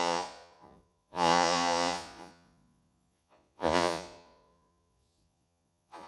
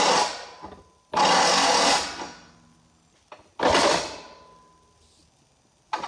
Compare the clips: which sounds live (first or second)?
second